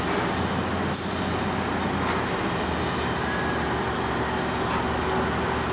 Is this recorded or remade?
recorded